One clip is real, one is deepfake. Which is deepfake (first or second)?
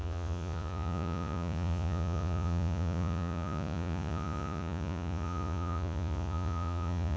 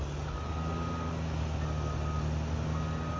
first